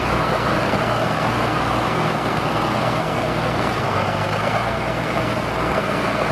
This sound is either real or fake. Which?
fake